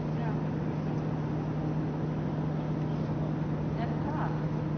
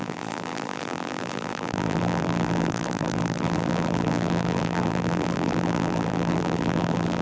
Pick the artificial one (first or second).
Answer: second